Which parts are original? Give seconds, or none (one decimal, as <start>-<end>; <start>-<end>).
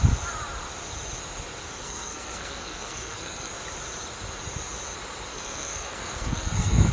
0.0-1.7; 3.5-5.3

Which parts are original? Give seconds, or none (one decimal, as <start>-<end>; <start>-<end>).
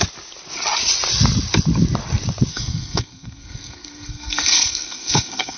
0.0-2.5